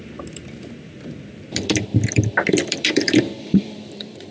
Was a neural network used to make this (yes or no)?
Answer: yes